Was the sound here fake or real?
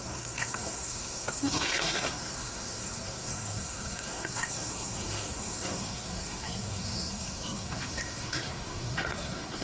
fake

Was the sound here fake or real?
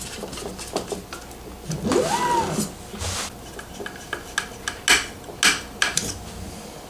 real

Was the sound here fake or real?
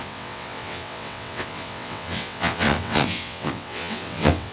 fake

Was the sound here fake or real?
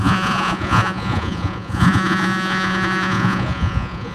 fake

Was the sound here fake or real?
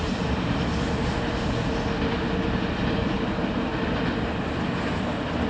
real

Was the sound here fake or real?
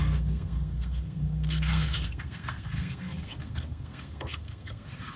fake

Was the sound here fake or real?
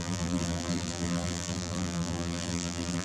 fake